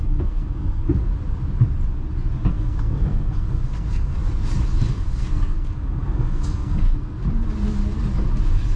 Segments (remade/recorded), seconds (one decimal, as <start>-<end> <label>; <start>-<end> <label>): 0.0-1.1 remade; 1.1-2.5 recorded; 2.5-4.2 remade; 4.2-4.9 recorded; 4.9-7.2 remade; 7.2-8.8 recorded